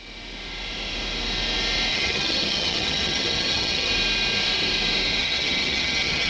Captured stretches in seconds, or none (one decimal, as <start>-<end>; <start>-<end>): 0.0-1.9; 3.9-5.2